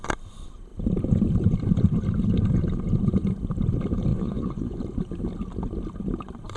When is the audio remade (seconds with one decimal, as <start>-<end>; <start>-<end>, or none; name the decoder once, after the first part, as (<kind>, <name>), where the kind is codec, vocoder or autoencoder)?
4.1-4.8 (vocoder, Vocos)

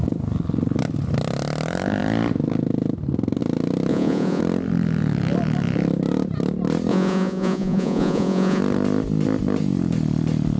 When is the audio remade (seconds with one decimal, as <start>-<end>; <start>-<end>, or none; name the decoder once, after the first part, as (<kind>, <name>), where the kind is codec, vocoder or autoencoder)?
3.9-4.4 (vocoder, Vocos); 6.9-8.6